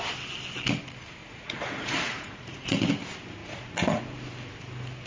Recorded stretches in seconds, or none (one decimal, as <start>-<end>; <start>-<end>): 0.0-1.2; 2.9-3.4; 4.0-5.1